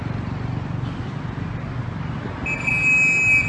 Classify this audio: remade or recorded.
recorded